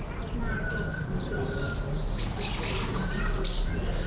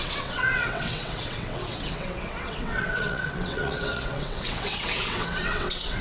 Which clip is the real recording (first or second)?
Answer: first